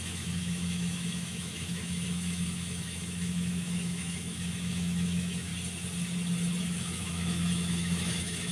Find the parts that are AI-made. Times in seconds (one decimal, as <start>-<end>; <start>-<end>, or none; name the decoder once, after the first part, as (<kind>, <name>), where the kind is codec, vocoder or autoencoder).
0.0-5.5 (autoencoder, DAC-VAE); 6.6-8.5